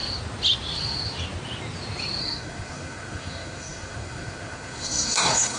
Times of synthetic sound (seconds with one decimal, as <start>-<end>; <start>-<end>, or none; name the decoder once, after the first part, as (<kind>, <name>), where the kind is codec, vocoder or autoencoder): 2.2-5.6 (codec, SNAC)